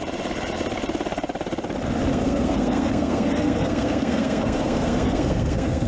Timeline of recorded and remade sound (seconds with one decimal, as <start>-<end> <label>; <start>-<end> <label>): 0.0-2.1 recorded; 2.1-5.9 remade